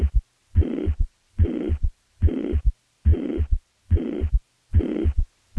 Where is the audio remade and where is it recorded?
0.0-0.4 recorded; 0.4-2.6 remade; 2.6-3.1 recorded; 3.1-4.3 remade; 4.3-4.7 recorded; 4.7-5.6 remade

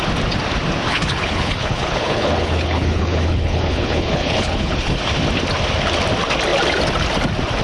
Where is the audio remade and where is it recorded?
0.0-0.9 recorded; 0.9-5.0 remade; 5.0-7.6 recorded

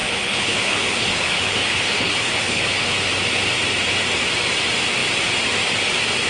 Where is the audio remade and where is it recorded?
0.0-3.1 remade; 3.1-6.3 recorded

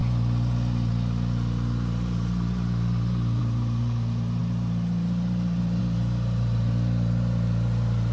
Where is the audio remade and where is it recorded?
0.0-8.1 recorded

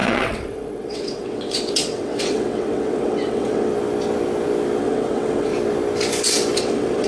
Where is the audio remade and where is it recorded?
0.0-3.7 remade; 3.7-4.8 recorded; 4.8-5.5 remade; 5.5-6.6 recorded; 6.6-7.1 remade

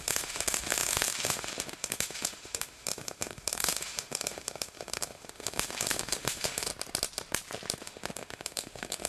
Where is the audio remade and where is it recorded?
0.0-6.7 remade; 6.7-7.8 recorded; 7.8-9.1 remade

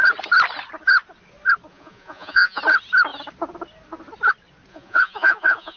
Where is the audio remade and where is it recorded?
0.0-1.7 recorded; 1.7-2.6 remade; 2.6-4.7 recorded; 4.7-5.8 remade